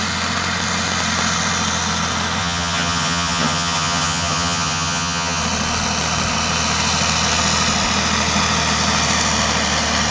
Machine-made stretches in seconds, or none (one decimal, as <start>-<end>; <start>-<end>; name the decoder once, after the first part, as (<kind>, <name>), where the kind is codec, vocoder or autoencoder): 2.4-5.4 (vocoder, HiFi-GAN)